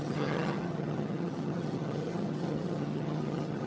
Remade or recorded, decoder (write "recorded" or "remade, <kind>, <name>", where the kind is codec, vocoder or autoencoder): remade, vocoder, HiFi-GAN